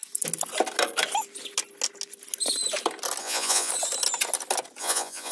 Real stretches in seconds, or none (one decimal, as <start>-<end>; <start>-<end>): 0.0-3.2; 3.7-4.8